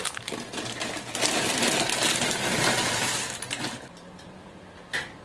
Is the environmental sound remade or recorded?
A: recorded